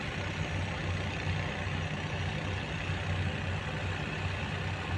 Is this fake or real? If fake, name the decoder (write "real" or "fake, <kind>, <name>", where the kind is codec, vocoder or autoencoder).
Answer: real